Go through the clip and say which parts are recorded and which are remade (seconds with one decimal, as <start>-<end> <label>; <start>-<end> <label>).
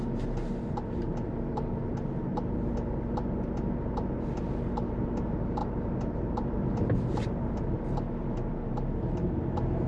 0.0-9.9 recorded